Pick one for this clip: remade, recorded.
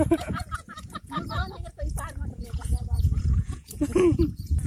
remade